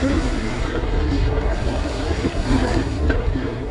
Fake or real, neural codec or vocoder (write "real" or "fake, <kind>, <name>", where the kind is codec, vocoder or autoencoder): fake, codec, SNAC